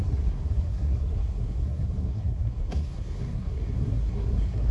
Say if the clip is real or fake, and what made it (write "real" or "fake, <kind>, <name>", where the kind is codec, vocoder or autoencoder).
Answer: fake, codec, SNAC